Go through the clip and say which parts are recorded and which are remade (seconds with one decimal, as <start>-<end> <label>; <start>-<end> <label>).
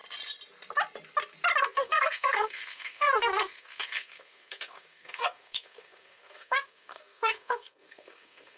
0.0-1.6 recorded; 1.6-8.6 remade